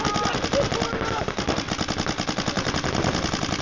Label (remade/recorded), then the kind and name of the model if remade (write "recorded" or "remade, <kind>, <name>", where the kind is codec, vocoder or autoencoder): recorded